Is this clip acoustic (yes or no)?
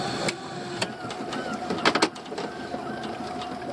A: yes